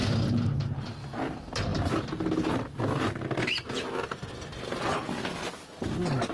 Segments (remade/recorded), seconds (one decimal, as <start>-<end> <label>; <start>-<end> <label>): 0.0-6.3 recorded